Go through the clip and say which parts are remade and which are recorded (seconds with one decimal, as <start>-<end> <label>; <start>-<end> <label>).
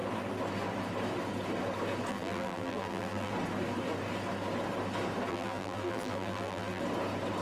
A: 0.0-2.1 recorded; 2.1-3.3 remade; 3.3-5.3 recorded; 5.3-6.8 remade; 6.8-7.4 recorded